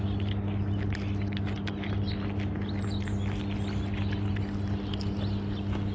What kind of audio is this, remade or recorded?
recorded